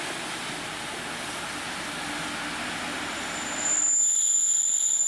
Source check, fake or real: real